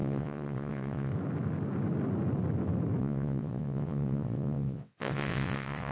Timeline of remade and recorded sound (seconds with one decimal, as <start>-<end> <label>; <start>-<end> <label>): 0.0-1.1 remade; 1.1-3.0 recorded; 3.0-5.9 remade